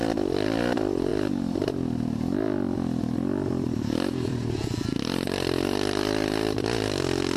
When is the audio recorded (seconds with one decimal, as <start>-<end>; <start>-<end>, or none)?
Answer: 0.0-1.1; 4.5-7.4